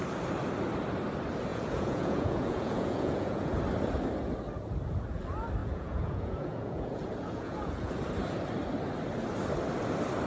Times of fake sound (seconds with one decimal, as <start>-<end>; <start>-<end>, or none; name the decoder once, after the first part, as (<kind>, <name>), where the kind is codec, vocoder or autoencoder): 1.5-3.6 (vocoder, Vocos); 5.6-7.9